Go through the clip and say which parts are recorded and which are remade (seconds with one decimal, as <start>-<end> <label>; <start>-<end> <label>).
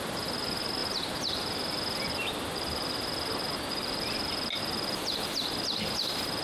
0.0-6.4 recorded